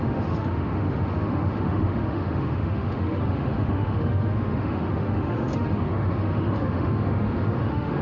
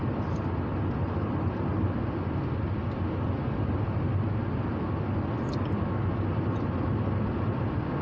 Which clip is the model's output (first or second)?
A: first